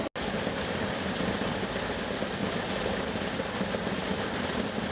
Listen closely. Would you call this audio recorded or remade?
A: recorded